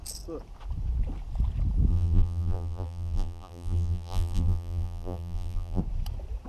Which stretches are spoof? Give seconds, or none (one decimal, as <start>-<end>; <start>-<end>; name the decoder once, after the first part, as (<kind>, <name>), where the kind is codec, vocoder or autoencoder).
1.9-5.8 (vocoder, BigVGAN v2)